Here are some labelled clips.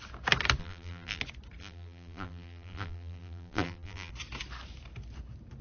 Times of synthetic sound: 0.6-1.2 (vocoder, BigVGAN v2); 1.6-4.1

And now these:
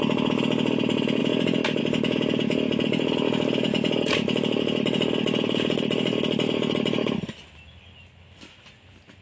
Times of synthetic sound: none

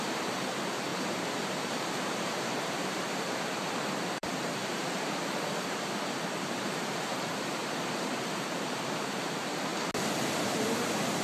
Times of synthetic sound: 0.0-9.7 (vocoder, BigVGAN v2)

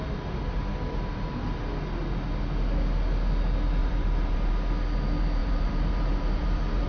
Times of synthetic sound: 3.8-4.5 (vocoder, BigVGAN v2); 5.4-6.9

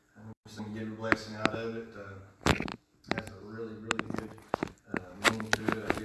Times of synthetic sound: none